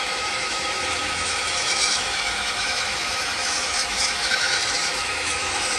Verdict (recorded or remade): remade